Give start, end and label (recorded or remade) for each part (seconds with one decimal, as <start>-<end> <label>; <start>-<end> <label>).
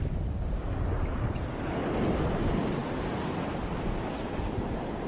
0.0-5.1 recorded